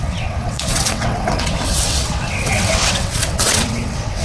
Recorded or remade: remade